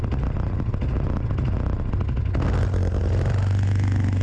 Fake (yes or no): no